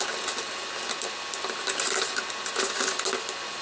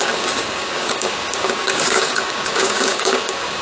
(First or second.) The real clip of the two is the first